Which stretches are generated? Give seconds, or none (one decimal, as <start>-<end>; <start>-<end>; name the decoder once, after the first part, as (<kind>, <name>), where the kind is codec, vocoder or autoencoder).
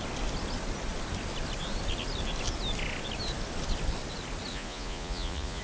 4.5-5.6 (vocoder, Vocos)